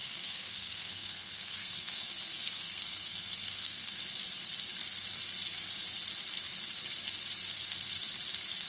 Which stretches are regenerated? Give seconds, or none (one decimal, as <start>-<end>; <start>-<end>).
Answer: 0.0-4.0